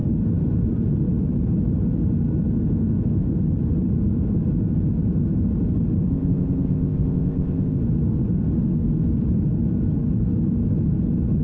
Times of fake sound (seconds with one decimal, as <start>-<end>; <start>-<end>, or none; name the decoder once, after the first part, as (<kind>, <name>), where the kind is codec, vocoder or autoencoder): 6.1-7.8 (codec, ZipCodec)